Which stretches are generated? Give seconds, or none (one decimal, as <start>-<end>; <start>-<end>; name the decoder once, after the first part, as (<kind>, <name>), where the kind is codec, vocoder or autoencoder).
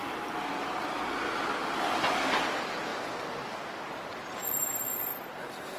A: none